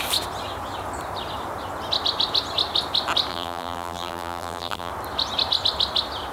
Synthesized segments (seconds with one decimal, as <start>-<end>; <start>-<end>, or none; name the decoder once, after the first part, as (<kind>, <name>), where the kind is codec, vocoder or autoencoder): 3.3-4.9 (vocoder, BigVGAN v2)